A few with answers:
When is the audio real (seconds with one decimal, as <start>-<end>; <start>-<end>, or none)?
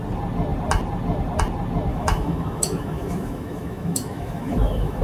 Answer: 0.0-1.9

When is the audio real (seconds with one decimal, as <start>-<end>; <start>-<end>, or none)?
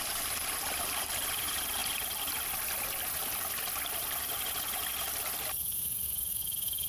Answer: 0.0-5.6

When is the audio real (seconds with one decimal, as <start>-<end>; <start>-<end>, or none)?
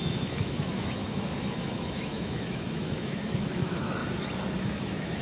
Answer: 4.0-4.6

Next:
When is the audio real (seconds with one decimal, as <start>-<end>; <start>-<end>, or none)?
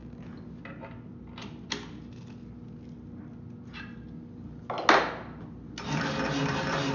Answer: 0.0-6.9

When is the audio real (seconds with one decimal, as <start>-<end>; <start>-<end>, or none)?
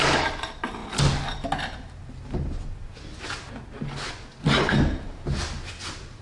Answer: 0.0-6.2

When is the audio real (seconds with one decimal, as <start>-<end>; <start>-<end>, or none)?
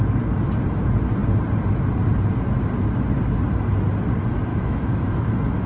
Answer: 0.0-4.5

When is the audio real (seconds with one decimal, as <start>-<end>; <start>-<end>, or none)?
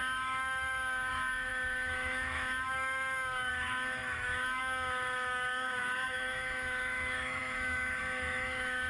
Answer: none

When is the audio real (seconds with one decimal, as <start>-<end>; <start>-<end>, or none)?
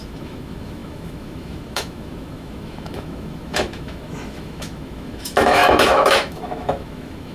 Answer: none